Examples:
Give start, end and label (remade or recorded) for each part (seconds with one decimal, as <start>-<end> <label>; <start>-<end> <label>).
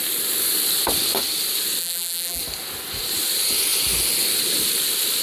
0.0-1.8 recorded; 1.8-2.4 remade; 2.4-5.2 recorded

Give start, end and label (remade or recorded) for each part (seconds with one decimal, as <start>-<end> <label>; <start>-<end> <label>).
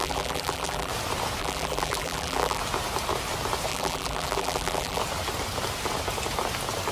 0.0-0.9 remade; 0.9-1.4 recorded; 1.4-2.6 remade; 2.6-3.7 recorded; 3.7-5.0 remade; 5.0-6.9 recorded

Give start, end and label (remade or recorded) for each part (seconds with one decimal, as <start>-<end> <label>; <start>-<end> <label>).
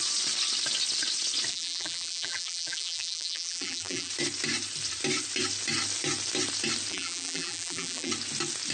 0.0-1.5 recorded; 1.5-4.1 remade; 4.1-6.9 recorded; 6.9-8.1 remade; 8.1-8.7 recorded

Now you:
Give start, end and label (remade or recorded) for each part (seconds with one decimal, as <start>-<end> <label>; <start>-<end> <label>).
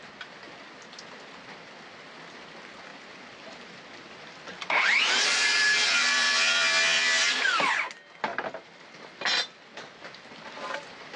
0.0-2.9 recorded; 2.9-7.4 remade; 7.4-8.3 recorded; 8.3-11.2 remade